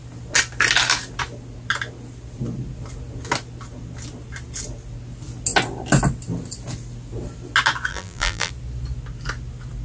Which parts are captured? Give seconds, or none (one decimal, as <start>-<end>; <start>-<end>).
0.0-7.9; 8.5-9.8